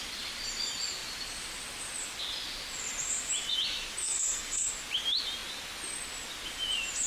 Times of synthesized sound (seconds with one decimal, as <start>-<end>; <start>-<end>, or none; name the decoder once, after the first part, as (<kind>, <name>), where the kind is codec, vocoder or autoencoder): 4.0-4.7 (codec, SNAC)